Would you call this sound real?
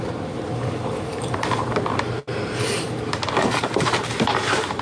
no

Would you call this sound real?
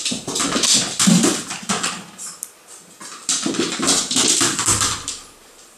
yes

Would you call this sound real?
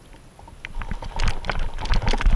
yes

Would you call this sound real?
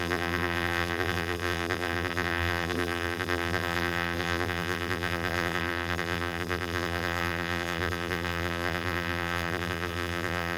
no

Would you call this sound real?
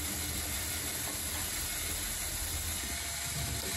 yes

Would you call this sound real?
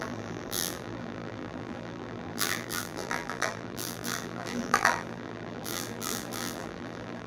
no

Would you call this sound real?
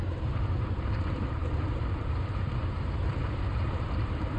no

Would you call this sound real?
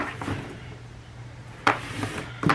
no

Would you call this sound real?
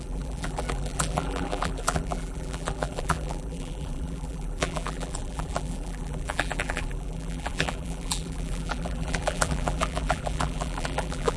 no